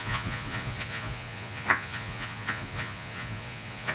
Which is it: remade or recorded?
remade